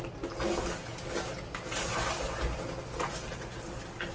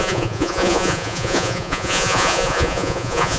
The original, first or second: first